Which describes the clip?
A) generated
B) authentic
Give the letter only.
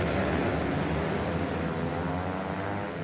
B